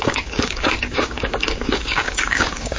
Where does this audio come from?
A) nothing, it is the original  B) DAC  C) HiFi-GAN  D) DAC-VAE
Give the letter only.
B